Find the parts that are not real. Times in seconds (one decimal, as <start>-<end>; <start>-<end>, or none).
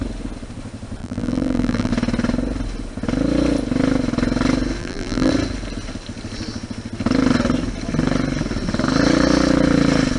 1.0-1.9; 4.8-5.3